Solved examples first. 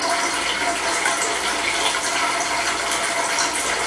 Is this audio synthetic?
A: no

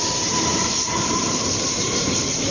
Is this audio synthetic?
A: yes